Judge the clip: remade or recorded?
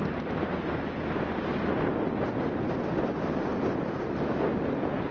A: recorded